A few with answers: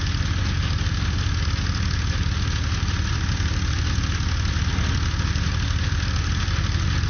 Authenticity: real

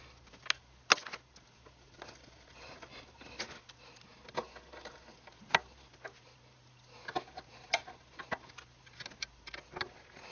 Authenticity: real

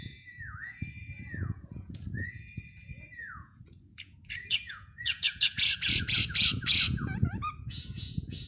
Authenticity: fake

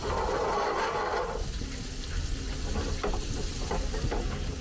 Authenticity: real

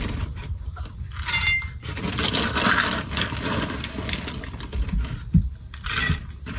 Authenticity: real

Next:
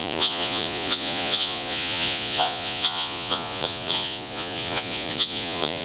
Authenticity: fake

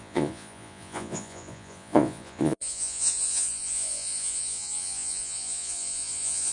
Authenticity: fake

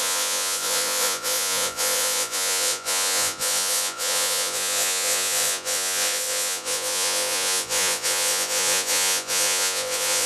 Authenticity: fake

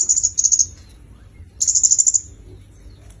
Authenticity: real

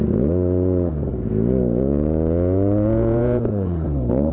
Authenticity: fake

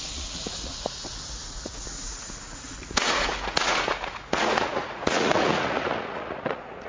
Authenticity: fake